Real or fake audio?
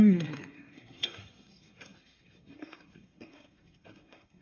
fake